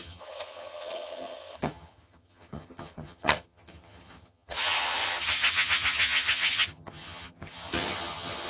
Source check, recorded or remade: remade